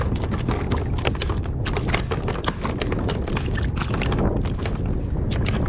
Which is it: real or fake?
real